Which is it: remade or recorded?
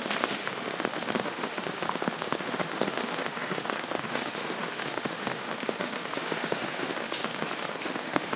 remade